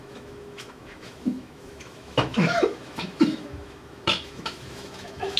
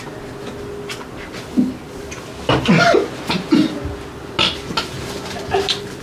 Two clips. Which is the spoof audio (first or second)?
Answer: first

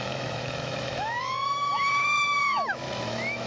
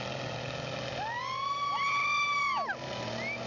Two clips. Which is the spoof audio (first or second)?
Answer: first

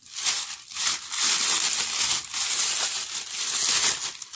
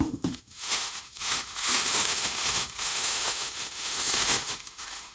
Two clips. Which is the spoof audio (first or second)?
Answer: second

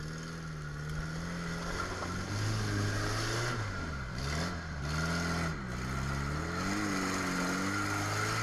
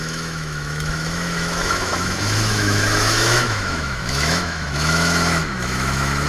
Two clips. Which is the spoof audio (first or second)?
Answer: second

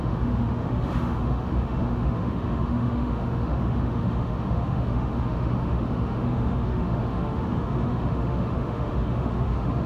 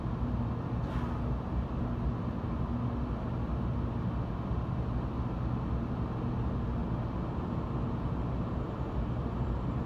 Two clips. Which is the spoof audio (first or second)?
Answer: first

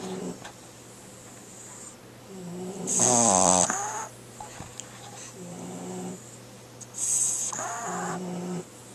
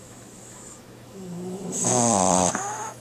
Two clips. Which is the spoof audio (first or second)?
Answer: second